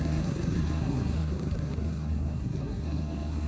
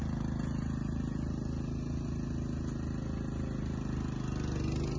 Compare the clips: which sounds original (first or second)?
second